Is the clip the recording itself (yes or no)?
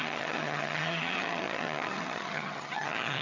no